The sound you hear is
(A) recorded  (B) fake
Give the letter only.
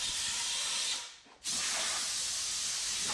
A